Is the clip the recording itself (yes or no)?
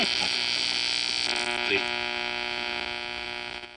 yes